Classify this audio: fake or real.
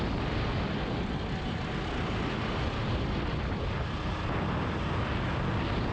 real